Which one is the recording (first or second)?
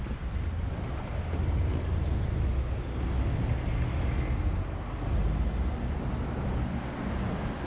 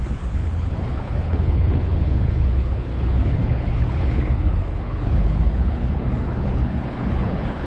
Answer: first